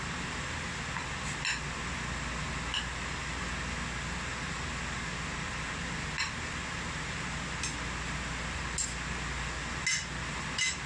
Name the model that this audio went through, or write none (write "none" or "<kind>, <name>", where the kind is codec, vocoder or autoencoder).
none